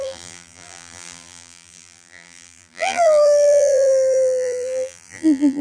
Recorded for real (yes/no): no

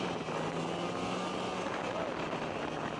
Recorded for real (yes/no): yes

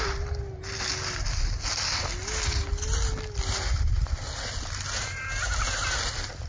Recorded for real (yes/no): yes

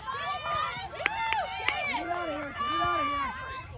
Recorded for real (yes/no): no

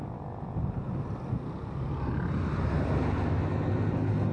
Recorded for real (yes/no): yes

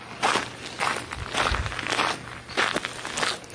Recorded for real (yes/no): yes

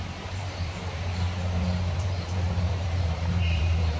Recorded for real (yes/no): no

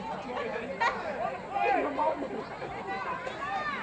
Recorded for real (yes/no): yes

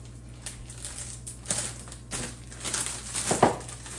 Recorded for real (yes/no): yes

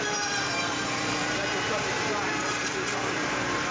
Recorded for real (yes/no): no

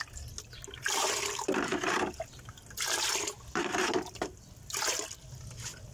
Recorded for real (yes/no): yes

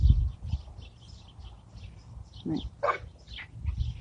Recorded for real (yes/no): yes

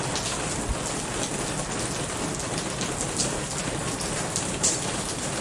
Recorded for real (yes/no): yes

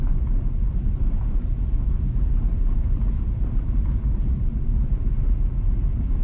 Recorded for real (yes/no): no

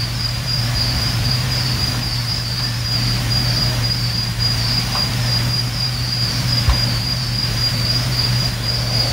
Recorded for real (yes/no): no